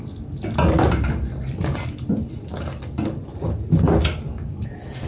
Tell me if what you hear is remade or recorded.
recorded